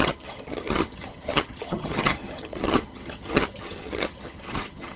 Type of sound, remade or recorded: remade